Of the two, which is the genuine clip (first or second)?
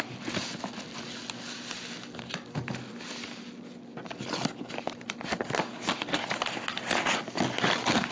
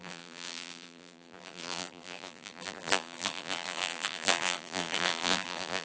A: first